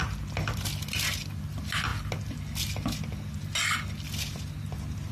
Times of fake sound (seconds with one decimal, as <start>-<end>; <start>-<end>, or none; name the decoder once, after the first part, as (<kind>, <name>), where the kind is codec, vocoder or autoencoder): none